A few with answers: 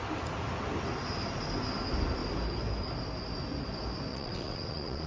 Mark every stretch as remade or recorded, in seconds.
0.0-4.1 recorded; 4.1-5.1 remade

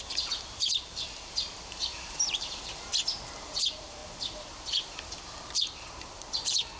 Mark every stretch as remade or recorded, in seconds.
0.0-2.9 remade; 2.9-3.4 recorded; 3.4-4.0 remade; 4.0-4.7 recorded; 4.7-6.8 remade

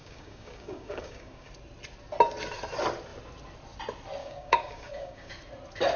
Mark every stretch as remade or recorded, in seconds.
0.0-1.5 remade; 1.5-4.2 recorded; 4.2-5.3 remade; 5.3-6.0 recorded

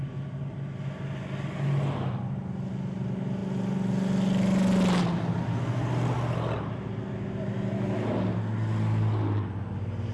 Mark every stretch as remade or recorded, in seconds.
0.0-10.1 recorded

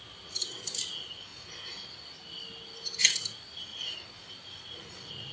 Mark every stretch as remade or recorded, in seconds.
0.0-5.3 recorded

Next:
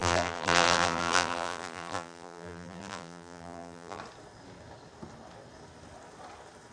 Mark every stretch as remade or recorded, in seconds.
0.0-4.0 remade; 4.0-6.7 recorded